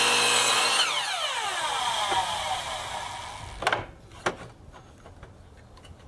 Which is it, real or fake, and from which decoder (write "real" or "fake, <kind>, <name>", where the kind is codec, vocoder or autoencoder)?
real